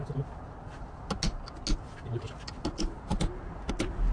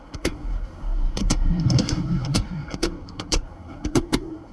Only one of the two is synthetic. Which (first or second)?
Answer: second